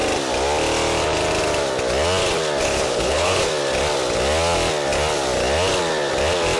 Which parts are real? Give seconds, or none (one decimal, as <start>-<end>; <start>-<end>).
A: 0.0-2.6; 3.5-6.6